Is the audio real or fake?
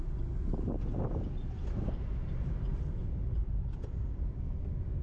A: real